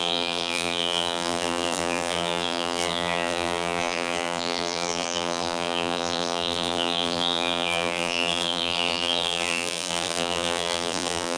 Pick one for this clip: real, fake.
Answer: fake